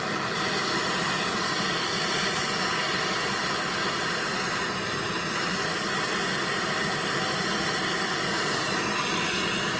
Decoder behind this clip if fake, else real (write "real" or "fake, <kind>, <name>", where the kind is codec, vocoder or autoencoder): real